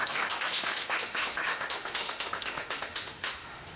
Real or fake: fake